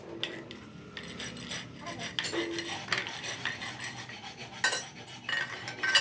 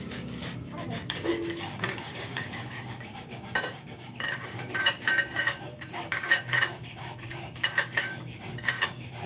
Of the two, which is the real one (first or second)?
first